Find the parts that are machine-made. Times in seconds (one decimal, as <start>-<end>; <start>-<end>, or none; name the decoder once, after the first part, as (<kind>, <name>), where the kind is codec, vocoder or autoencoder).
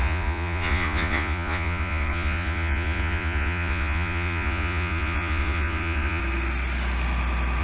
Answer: 0.0-6.2 (vocoder, Vocos)